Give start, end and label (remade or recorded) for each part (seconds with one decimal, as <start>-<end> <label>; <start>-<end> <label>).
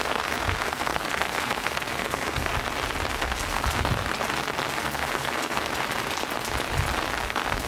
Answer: 0.0-2.5 remade; 2.5-3.1 recorded; 3.1-3.9 remade; 3.9-4.8 recorded; 4.8-5.7 remade; 5.7-7.2 recorded; 7.2-7.7 remade